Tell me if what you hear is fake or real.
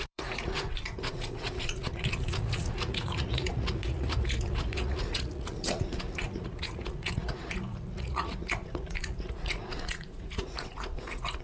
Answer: fake